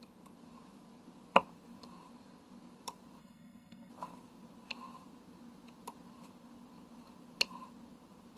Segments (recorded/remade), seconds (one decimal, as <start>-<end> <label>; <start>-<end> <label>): 0.0-3.2 recorded; 3.2-3.9 remade; 3.9-8.4 recorded